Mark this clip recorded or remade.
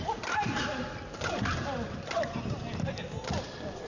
recorded